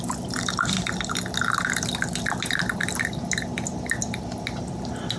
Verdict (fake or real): real